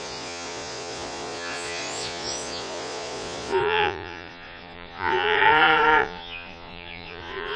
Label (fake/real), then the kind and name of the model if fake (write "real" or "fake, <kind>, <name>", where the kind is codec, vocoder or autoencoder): fake, vocoder, Vocos